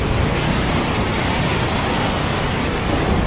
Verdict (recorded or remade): remade